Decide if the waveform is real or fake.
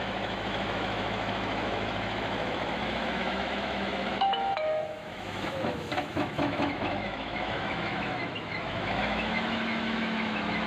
fake